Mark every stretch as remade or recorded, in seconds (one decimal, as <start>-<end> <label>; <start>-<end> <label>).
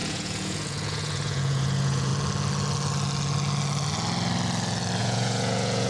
0.0-2.1 remade; 2.1-5.0 recorded; 5.0-5.9 remade